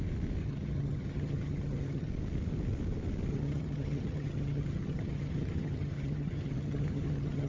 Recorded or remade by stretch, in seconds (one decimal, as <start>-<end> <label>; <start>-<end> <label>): 0.0-0.4 recorded; 0.4-2.1 remade; 2.1-3.3 recorded; 3.3-7.5 remade

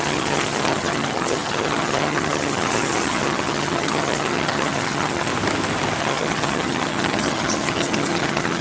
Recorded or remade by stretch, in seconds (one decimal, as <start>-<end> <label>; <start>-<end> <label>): 0.0-5.3 remade; 5.3-6.0 recorded; 6.0-8.6 remade

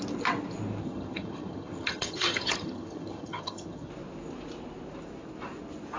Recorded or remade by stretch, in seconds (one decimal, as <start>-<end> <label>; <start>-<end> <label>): 0.0-0.8 recorded; 0.8-3.9 remade; 3.9-6.0 recorded

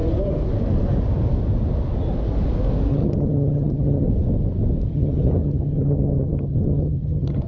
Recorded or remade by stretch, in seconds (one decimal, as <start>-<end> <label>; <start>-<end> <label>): 0.0-2.9 recorded; 2.9-4.1 remade; 4.1-4.9 recorded; 4.9-7.5 remade

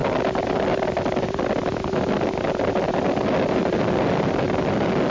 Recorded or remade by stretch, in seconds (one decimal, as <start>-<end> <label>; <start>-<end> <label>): 0.0-5.1 recorded

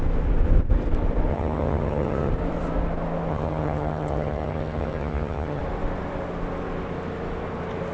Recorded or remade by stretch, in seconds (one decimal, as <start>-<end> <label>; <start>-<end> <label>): 0.0-1.3 recorded; 1.3-2.3 remade; 2.3-3.3 recorded; 3.3-5.6 remade; 5.6-7.9 recorded